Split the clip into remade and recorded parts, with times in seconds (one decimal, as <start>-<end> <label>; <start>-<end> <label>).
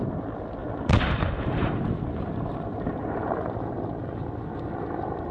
0.0-0.6 recorded; 0.6-3.8 remade; 3.8-5.3 recorded